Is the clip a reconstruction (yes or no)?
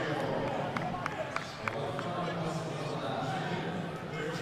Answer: no